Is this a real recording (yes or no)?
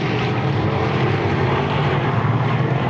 no